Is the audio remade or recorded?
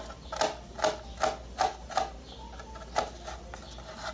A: recorded